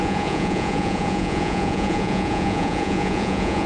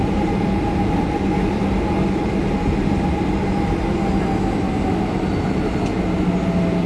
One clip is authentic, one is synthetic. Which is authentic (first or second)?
second